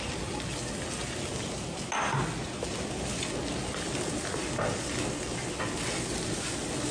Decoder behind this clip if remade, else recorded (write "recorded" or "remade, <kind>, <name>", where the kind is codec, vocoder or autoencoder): recorded